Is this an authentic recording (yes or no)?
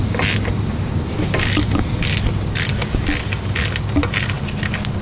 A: yes